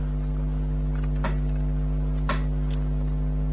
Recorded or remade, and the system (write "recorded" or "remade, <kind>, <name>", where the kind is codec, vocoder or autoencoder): recorded